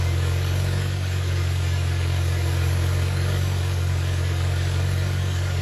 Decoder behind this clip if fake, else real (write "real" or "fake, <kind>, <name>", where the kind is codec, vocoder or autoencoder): fake, codec, DAC